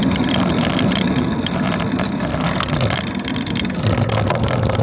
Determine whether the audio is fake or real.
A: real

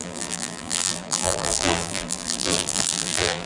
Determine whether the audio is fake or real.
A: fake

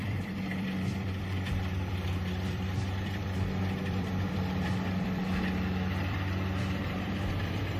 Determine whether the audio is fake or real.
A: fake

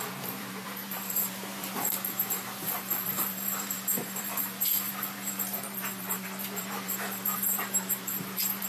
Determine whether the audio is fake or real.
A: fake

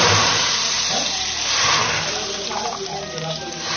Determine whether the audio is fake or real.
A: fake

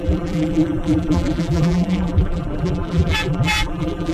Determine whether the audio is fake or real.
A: fake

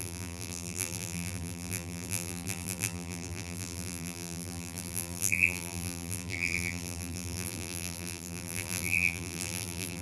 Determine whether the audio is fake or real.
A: fake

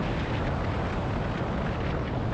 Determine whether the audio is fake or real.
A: real